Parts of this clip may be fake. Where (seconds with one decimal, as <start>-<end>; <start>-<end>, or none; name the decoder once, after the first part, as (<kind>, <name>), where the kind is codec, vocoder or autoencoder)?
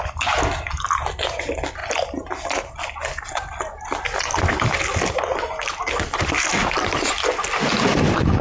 6.6-7.3 (vocoder, BigVGAN v2)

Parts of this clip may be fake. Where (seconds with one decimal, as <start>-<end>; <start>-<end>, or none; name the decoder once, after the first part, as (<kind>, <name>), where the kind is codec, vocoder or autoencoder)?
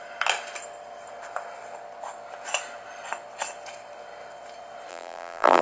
4.9-5.6 (vocoder, BigVGAN v2)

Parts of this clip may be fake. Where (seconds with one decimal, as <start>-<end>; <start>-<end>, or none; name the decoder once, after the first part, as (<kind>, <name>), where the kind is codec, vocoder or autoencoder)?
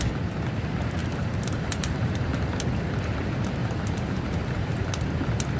1.0-2.1 (vocoder, BigVGAN v2); 3.6-4.9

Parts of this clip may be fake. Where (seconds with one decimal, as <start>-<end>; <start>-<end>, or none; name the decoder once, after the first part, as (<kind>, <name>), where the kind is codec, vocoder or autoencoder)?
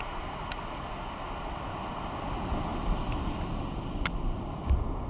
none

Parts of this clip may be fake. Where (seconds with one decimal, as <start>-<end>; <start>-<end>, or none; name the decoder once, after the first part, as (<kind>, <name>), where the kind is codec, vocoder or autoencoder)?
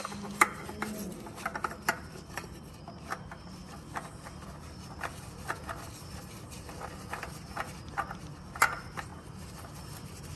none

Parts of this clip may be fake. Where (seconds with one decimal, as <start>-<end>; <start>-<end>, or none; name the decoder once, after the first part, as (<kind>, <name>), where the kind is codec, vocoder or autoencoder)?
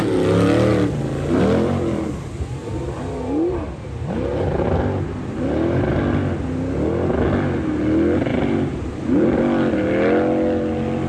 8.3-9.4 (vocoder, BigVGAN v2)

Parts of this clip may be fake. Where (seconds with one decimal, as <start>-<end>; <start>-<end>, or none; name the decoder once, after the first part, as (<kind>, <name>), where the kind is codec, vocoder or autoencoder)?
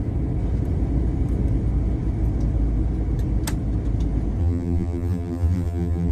4.4-6.1 (vocoder, BigVGAN v2)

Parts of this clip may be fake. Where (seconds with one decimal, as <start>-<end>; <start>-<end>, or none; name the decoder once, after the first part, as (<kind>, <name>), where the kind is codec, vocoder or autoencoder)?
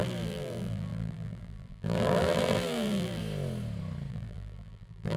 0.0-3.2 (vocoder, BigVGAN v2); 4.1-5.2